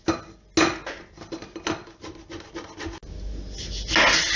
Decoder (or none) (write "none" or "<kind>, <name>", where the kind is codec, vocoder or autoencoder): none